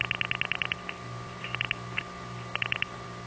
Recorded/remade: recorded